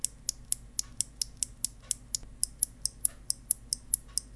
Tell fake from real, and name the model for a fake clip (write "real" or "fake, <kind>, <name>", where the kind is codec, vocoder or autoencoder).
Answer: real